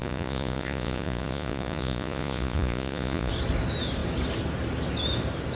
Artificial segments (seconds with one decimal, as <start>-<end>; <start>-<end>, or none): 0.0-3.3